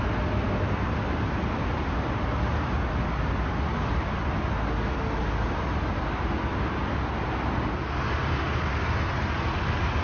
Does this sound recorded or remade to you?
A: recorded